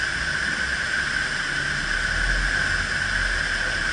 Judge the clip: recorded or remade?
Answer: recorded